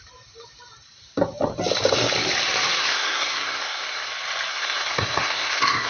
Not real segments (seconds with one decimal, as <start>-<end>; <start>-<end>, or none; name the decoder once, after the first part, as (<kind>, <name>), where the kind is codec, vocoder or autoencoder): 2.8-4.1 (codec, SNAC); 4.5-5.9